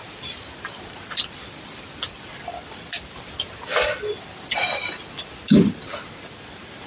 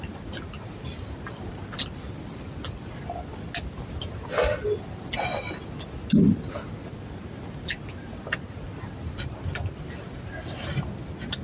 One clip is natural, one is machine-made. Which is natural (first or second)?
second